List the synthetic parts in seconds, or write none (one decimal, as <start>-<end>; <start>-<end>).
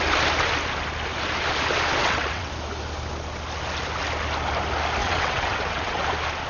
2.0-2.5; 5.0-6.0